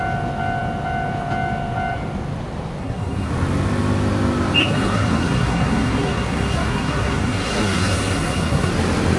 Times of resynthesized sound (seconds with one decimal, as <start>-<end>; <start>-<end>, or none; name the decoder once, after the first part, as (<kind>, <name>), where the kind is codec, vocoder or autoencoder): 2.8-3.3 (codec, SNAC); 4.6-8.7

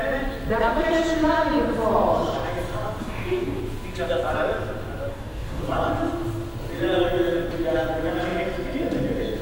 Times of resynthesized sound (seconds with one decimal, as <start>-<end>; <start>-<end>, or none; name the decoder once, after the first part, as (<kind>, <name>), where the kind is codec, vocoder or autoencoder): 3.0-3.6 (codec, DAC); 5.1-5.6

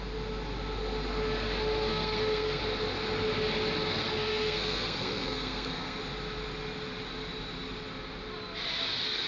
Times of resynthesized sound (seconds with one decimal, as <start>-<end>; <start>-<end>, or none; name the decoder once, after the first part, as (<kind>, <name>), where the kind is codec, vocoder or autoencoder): 1.9-2.6 (codec, SNAC); 3.9-6.0

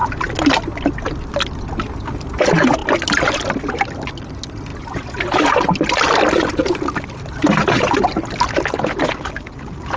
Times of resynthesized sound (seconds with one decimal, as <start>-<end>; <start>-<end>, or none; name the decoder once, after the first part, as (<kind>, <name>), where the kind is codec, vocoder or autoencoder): none

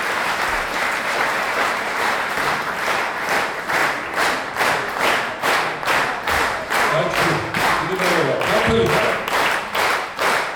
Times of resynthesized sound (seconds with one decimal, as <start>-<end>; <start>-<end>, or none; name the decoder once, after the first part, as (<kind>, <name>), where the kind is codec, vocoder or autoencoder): 0.0-3.8 (vocoder, BigVGAN v2); 4.6-8.3; 8.9-10.6